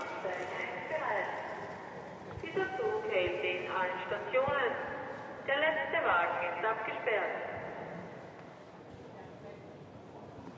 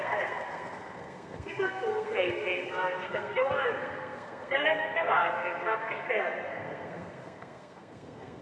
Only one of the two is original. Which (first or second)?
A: first